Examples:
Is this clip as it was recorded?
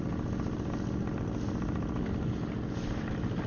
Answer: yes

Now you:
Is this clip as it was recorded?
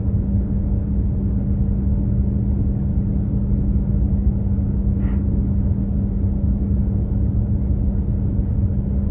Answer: yes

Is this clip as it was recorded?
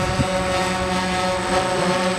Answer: yes